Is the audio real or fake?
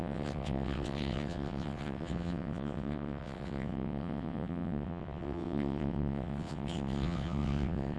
fake